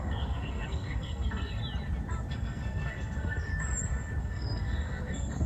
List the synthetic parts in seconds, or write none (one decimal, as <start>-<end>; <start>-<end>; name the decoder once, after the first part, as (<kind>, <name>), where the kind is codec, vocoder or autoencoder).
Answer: 0.0-1.6 (codec, SNAC); 2.3-3.5; 4.2-5.5